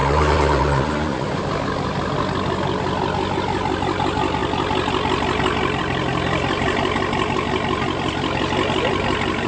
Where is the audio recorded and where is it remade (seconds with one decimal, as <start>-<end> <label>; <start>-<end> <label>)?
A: 0.0-1.4 remade; 1.4-9.5 recorded